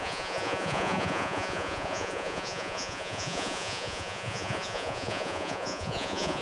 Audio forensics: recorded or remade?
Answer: remade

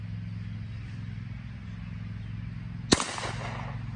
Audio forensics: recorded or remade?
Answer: recorded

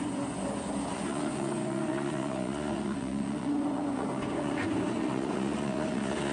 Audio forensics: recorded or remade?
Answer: remade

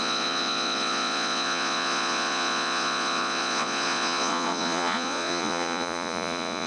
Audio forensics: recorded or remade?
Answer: remade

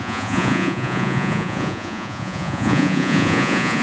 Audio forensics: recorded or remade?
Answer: remade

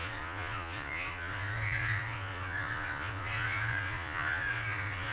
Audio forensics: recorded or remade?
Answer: remade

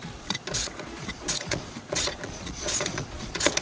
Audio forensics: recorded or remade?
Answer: remade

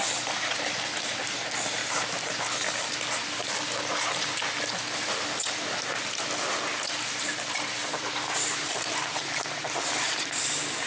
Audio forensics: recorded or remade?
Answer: recorded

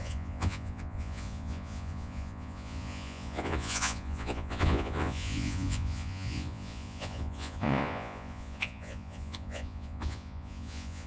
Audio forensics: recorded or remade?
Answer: remade